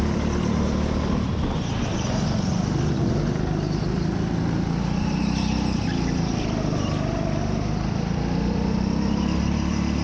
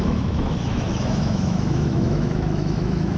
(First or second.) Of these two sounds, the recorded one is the first